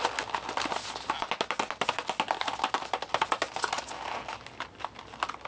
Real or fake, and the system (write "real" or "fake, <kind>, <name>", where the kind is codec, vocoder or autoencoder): real